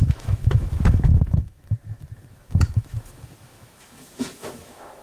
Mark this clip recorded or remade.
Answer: remade